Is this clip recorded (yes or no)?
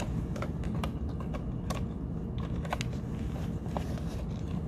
yes